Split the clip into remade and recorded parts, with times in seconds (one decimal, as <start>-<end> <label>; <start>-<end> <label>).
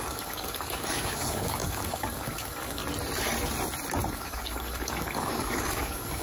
0.0-2.8 remade; 2.8-4.1 recorded; 4.1-6.2 remade